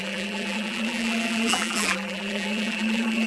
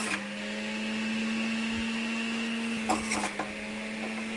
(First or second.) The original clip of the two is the second